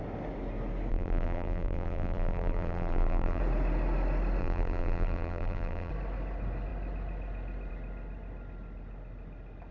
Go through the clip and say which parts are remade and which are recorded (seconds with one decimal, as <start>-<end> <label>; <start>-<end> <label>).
0.0-0.9 recorded; 0.9-3.4 remade; 3.4-4.4 recorded; 4.4-5.9 remade; 5.9-9.7 recorded